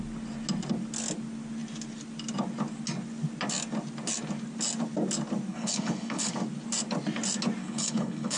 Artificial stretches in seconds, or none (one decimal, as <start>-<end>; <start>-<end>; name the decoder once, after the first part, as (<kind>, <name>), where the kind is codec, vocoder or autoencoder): 5.5-6.3 (codec, HILCodec); 7.6-8.4